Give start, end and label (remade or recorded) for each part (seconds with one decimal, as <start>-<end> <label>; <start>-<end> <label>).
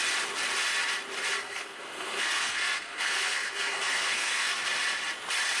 0.0-1.4 recorded; 1.4-4.6 remade; 4.6-5.6 recorded